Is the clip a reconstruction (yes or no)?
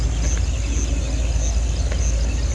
no